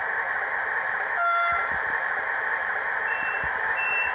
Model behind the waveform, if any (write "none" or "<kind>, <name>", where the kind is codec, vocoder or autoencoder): vocoder, BigVGAN v2